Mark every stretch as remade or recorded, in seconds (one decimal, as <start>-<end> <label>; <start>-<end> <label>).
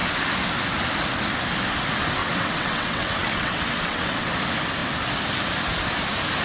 0.0-2.2 recorded; 2.2-4.3 remade; 4.3-6.4 recorded